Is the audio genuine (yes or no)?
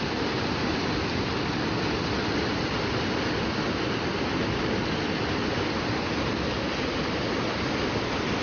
yes